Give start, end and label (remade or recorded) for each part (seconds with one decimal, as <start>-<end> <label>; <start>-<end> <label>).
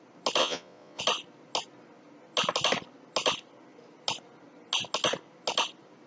0.0-0.4 recorded; 0.4-1.0 remade; 1.0-6.1 recorded